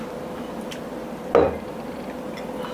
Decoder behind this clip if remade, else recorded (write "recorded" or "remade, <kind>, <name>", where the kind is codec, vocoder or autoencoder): recorded